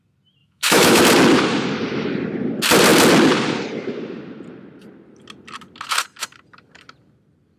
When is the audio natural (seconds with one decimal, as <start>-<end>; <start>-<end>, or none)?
0.0-0.4; 1.0-7.6